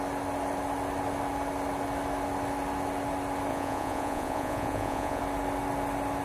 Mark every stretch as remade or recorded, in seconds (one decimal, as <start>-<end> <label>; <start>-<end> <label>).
0.0-3.5 recorded; 3.5-5.2 remade; 5.2-6.2 recorded